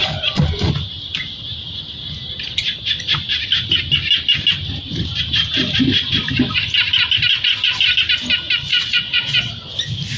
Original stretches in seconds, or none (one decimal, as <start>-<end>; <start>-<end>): 0.0-8.7; 9.5-10.2